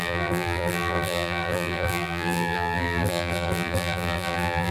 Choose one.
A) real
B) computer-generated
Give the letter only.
B